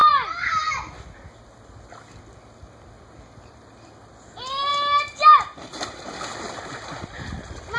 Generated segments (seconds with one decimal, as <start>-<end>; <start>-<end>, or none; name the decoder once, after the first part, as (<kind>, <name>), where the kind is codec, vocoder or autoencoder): none